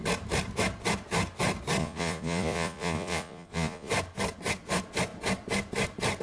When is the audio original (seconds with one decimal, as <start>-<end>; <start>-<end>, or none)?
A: 0.0-1.8; 3.9-6.2